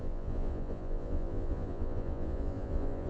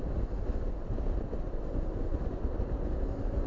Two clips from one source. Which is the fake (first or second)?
first